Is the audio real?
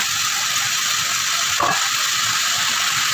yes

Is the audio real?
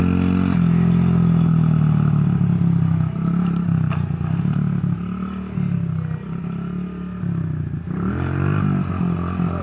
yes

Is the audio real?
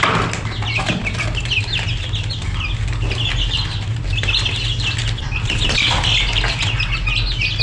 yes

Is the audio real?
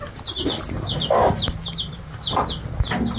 yes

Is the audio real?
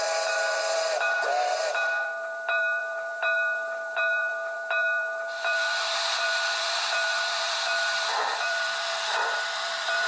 no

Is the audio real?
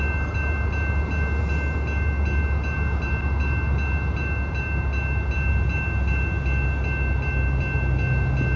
yes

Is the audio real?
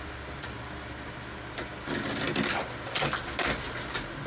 yes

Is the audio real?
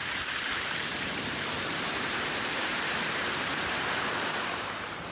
no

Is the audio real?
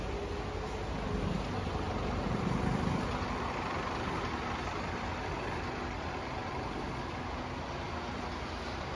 yes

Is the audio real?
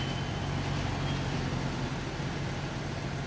yes